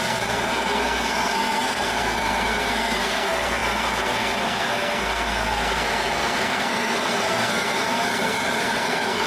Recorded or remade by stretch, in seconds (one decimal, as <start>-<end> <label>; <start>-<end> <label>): 0.0-9.3 remade